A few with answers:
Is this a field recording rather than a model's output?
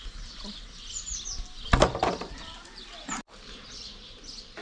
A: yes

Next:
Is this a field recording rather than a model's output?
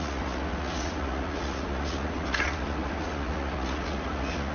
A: no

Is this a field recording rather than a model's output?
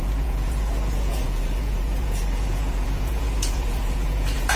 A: no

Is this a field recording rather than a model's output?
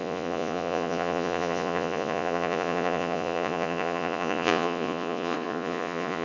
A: no